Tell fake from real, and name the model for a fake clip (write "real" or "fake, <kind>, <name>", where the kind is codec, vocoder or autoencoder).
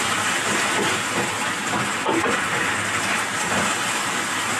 real